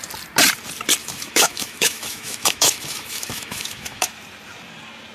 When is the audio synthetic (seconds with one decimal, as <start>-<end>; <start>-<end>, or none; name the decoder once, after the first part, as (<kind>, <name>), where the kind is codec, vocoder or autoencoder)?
1.0-4.1 (autoencoder, DAC-VAE)